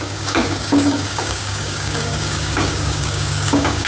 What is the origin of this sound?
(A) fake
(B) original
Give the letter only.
A